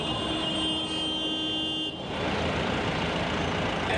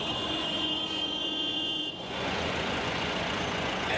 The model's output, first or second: second